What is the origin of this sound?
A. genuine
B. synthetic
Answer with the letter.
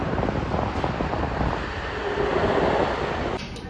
A